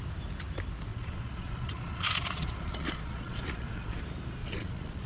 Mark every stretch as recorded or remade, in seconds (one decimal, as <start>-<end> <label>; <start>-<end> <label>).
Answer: 0.0-0.9 recorded; 0.9-4.0 remade; 4.0-4.4 recorded; 4.4-5.1 remade